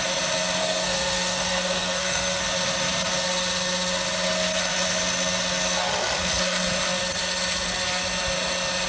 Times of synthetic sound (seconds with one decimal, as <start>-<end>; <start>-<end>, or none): 0.6-2.4